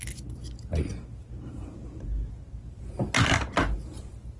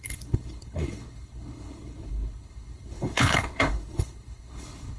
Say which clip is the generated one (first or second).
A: second